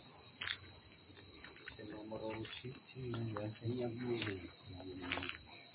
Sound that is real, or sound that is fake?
real